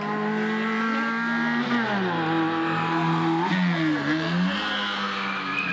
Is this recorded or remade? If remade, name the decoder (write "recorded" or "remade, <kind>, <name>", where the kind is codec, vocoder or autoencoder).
recorded